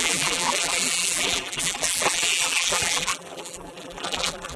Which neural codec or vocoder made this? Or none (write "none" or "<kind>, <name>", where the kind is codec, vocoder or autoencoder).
vocoder, BigVGAN v2